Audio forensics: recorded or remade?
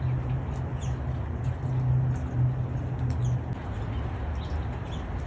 recorded